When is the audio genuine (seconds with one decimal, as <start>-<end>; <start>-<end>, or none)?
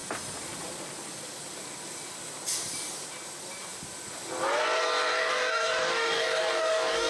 0.0-5.2